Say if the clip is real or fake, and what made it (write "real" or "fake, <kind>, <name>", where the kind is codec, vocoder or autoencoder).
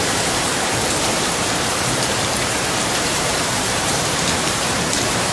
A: fake, vocoder, BigVGAN v2